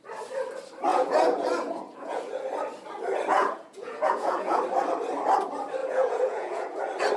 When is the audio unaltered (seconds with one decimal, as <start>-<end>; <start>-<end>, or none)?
0.0-0.9; 2.4-3.3; 4.6-5.8; 6.8-7.2